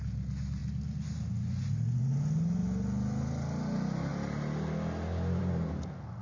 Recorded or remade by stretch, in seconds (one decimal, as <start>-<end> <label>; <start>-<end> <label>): 0.0-6.2 recorded